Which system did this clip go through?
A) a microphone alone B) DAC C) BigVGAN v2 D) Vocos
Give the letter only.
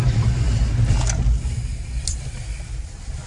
A